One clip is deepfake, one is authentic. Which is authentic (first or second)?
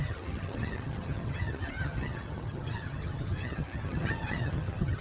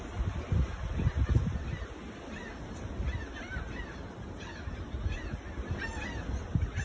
second